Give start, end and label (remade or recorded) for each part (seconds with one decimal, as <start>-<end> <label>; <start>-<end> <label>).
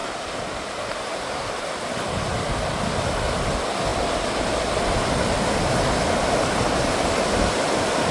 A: 0.0-8.1 recorded